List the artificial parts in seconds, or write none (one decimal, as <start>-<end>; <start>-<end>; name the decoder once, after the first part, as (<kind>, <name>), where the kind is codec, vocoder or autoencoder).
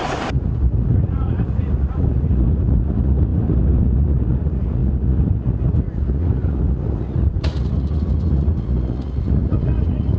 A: 0.0-10.2 (vocoder, Vocos)